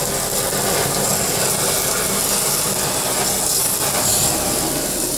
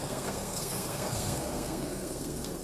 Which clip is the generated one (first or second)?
second